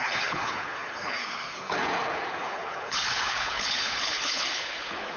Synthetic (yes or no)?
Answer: yes